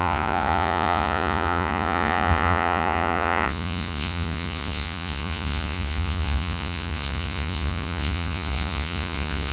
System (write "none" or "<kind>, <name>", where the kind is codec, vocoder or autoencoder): vocoder, Vocos